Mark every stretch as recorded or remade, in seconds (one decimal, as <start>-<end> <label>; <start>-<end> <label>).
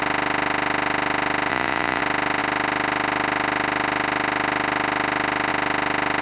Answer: 0.0-1.5 recorded; 1.5-2.0 remade; 2.0-6.2 recorded